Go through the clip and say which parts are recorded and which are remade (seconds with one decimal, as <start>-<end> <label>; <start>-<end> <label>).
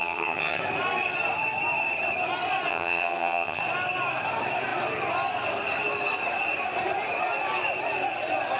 0.0-0.6 remade; 0.6-2.7 recorded; 2.7-3.6 remade; 3.6-8.6 recorded